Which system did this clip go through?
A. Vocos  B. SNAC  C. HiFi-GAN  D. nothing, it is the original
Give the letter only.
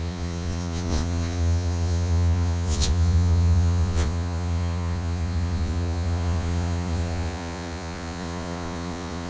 A